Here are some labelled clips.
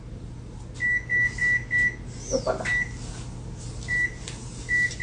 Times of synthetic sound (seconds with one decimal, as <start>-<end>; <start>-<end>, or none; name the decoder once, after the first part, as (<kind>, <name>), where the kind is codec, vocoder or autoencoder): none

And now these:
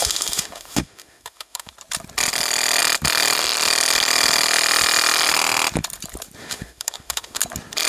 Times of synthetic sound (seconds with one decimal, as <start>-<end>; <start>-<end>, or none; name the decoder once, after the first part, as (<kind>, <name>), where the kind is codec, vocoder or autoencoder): 0.0-1.7 (autoencoder, DAC-VAE); 6.4-7.4

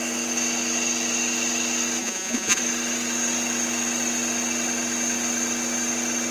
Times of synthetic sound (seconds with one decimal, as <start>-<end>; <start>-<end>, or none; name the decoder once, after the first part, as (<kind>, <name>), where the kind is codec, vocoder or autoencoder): 2.0-2.6 (vocoder, Vocos)

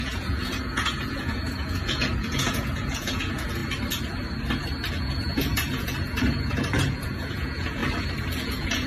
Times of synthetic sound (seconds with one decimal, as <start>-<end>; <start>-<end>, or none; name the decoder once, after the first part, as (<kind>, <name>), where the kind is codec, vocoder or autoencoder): 0.0-3.6 (vocoder, Vocos); 4.9-7.8; 8.4-8.9

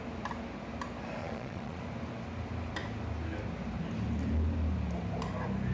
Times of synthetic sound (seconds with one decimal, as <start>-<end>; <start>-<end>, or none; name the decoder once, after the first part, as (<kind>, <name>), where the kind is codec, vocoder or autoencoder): 1.2-1.8 (vocoder, Vocos)

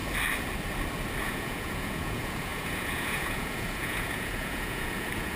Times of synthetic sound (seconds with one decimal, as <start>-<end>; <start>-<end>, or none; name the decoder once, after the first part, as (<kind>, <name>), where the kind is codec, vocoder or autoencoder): 1.2-5.4 (vocoder, Vocos)